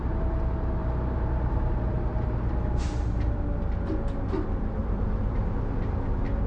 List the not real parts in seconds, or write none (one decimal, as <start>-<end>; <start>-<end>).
0.8-3.4; 4.8-5.4